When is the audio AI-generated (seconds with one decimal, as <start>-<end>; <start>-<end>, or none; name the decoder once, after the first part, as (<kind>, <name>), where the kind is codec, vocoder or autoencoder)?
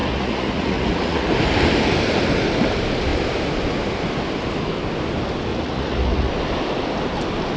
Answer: 0.0-1.3 (vocoder, Vocos); 5.5-6.3